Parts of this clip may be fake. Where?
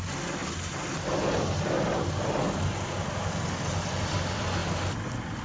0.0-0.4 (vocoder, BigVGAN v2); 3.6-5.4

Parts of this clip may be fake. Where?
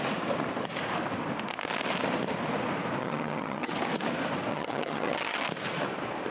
3.0-3.7 (vocoder, HiFi-GAN); 4.5-5.4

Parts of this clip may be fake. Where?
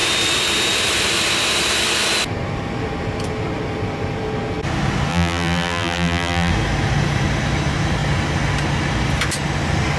5.1-6.5 (vocoder, BigVGAN v2)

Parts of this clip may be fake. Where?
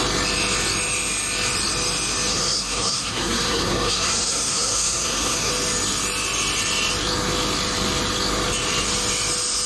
2.3-5.5 (codec, SNAC)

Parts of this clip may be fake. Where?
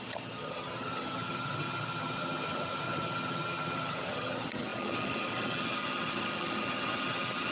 0.0-7.5 (vocoder, HiFi-GAN)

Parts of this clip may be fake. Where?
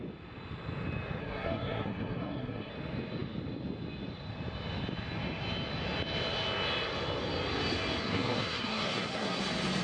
1.2-2.7 (codec, SNAC); 8.0-9.4